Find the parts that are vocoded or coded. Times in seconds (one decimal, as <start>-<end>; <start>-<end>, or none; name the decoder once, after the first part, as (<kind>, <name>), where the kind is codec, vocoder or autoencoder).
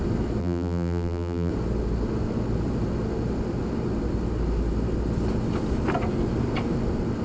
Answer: 0.4-1.5 (vocoder, BigVGAN v2)